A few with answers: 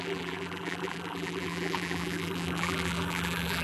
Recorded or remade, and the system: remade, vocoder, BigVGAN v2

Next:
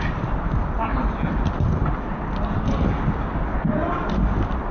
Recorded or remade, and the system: recorded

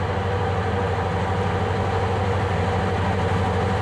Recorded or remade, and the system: recorded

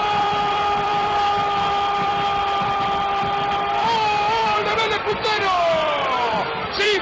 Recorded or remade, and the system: remade, vocoder, BigVGAN v2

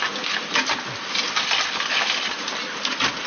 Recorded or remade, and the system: recorded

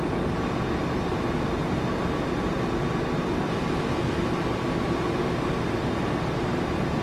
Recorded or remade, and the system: recorded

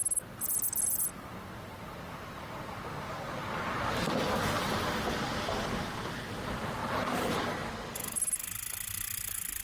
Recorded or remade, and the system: recorded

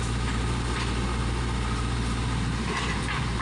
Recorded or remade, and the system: remade, vocoder, BigVGAN v2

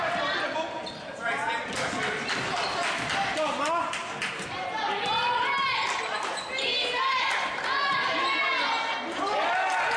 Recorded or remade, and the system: recorded